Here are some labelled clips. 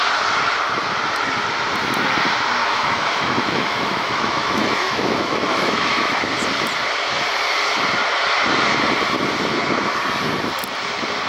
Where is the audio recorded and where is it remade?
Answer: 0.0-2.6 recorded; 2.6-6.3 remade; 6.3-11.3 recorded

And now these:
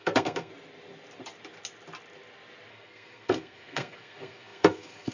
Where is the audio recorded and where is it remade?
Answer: 0.0-0.5 remade; 0.5-2.7 recorded; 2.7-5.1 remade